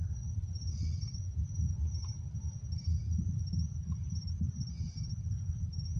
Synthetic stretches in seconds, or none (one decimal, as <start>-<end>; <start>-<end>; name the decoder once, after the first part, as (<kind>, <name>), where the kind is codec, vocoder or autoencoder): none